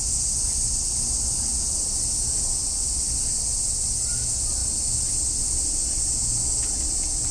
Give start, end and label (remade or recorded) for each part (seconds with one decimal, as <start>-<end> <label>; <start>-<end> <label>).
0.0-7.3 recorded